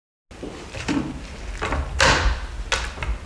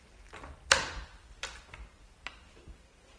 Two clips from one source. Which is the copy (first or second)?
second